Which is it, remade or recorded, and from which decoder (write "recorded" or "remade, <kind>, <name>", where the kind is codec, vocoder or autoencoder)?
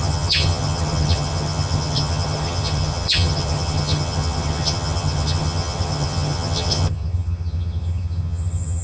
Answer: remade, vocoder, HiFi-GAN